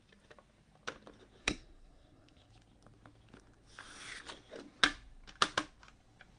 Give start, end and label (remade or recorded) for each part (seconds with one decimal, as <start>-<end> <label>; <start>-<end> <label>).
0.0-1.4 recorded; 1.4-2.5 remade; 2.5-6.4 recorded